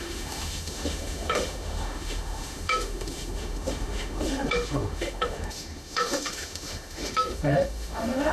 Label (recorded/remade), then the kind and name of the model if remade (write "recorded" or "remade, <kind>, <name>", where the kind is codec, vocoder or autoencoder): remade, autoencoder, DAC-VAE